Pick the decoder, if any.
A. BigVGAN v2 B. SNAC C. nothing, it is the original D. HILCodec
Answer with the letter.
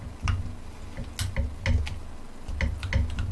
C